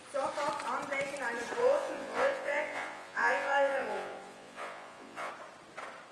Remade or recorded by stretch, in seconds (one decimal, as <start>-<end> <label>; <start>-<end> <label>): 0.0-1.6 recorded; 1.6-5.3 remade; 5.3-6.1 recorded